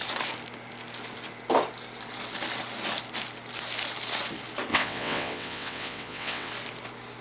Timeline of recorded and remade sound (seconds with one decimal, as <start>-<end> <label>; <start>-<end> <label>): 0.0-4.7 recorded; 4.7-6.5 remade; 6.5-7.2 recorded